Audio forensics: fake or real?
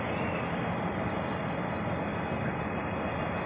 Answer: real